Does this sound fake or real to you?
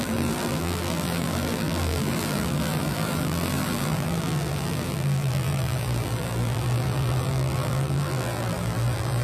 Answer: fake